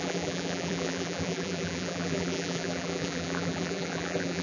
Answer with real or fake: fake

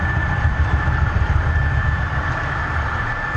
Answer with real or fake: fake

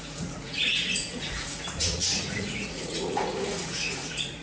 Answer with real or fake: fake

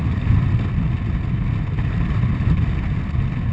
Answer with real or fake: real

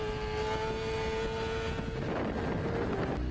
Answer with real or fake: real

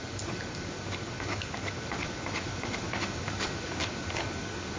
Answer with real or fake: fake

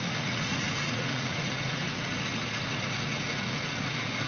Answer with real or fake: fake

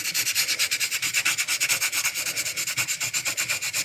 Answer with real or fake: fake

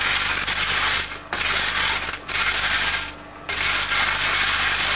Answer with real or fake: real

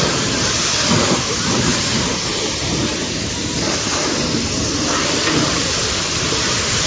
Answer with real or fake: fake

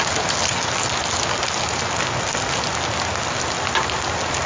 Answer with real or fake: real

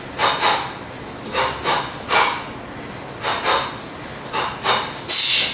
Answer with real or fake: real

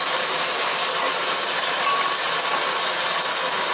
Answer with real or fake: real